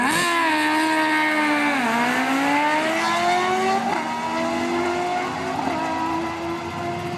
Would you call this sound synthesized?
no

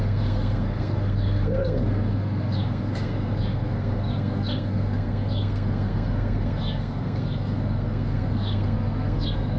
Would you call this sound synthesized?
yes